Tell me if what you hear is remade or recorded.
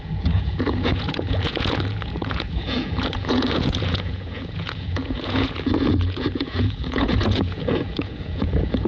remade